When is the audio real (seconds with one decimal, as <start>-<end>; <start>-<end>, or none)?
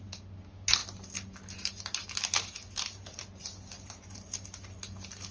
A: 0.0-5.3